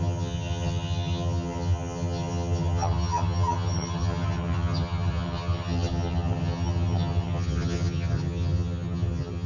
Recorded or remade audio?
remade